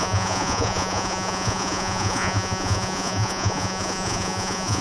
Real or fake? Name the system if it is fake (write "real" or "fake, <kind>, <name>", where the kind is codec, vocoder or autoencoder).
fake, vocoder, Vocos